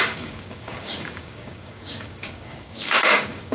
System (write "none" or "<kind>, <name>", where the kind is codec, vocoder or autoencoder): codec, DAC